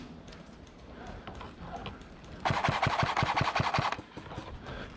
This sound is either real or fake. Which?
real